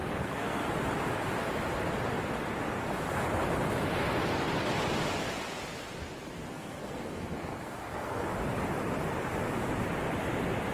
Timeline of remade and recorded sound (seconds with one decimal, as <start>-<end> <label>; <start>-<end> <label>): 0.0-0.7 remade; 0.7-6.5 recorded; 6.5-8.2 remade; 8.2-10.7 recorded